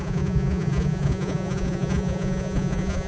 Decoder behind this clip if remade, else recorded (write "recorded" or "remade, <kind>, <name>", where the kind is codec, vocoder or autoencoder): remade, vocoder, Vocos